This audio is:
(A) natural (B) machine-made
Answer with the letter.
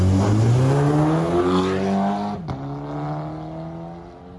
A